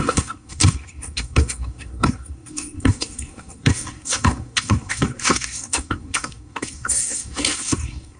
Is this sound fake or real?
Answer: fake